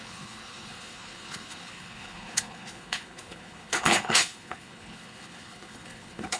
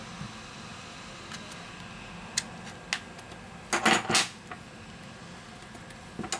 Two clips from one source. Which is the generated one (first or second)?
first